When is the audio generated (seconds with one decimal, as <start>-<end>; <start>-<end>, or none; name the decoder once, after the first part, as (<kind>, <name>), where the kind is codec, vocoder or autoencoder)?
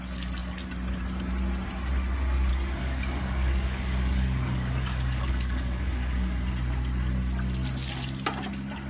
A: 2.5-6.5 (codec, DAC)